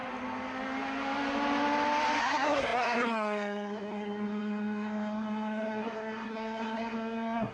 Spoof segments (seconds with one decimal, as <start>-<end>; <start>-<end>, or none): 2.2-7.5